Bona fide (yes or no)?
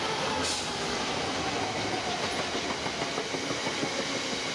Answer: yes